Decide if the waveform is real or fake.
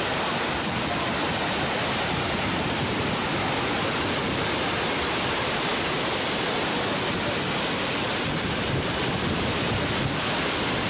real